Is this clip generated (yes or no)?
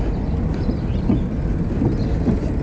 no